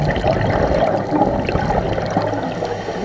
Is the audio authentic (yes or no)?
yes